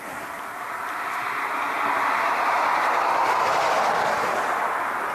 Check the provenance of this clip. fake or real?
real